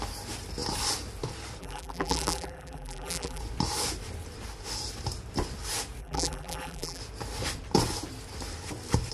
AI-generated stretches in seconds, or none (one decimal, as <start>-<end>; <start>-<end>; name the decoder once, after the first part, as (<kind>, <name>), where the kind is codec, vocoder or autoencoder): 1.6-3.4 (vocoder, BigVGAN v2); 6.0-7.0